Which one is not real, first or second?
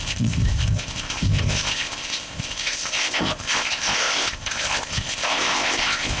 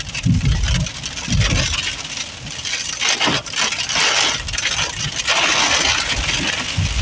first